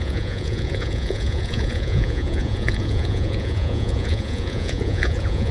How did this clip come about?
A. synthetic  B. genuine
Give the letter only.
A